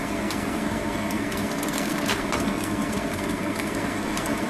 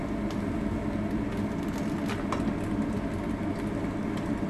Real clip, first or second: second